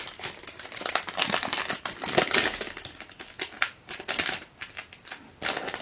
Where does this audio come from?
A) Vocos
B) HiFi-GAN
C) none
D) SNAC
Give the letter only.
C